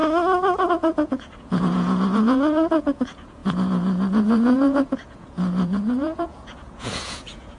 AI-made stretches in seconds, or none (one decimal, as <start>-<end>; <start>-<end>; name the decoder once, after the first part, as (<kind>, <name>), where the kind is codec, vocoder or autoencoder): 0.7-7.6 (vocoder, Vocos)